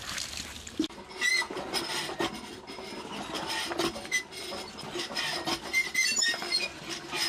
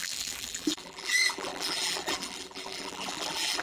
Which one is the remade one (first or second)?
second